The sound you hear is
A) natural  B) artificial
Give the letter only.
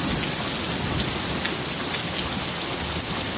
A